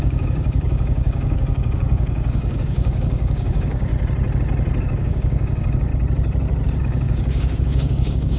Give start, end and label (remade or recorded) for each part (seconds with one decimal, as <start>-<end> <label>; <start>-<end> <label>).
0.0-3.9 remade; 3.9-4.8 recorded; 4.8-5.9 remade; 5.9-6.8 recorded; 6.8-8.4 remade